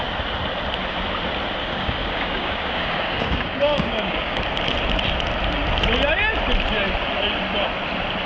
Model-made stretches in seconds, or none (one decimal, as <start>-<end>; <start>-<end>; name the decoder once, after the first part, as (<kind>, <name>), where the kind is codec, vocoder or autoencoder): 1.6-4.4 (codec, DAC)